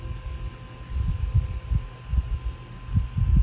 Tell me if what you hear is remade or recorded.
recorded